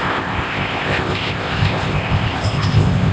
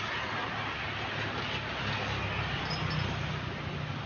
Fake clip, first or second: first